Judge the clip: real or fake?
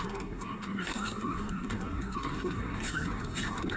fake